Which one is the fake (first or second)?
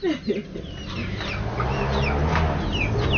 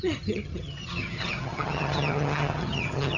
second